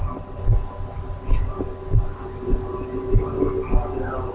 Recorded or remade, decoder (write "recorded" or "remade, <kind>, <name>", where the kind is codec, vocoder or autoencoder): recorded